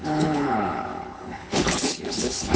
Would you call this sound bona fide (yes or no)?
no